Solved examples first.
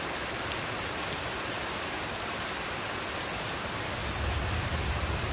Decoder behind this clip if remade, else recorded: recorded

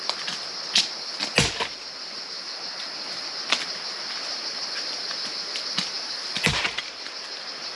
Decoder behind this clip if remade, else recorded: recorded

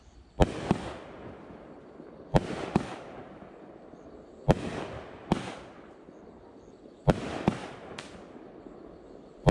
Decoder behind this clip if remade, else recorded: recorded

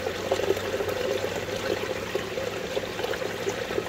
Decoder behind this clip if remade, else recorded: recorded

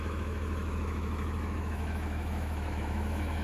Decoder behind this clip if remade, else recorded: remade, autoencoder, DAC-VAE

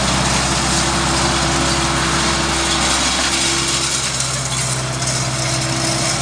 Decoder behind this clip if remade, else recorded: recorded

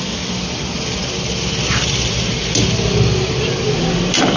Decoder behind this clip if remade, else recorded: recorded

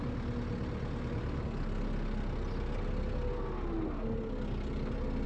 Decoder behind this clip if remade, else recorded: recorded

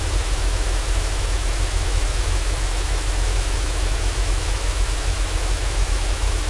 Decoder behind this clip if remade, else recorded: remade, autoencoder, DAC-VAE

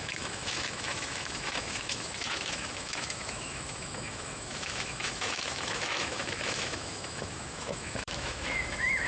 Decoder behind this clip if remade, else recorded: remade, autoencoder, DAC-VAE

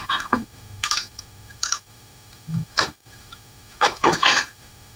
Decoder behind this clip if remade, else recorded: remade, autoencoder, DAC-VAE